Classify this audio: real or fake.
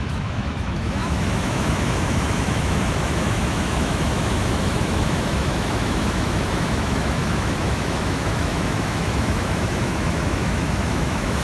fake